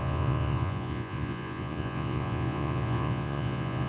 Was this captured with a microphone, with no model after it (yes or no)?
no